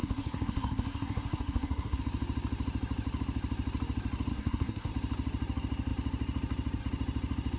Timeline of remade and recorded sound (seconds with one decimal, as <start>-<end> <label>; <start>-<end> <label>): 0.0-2.0 remade; 2.0-4.3 recorded; 4.3-4.9 remade; 4.9-7.6 recorded